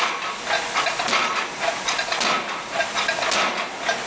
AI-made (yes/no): no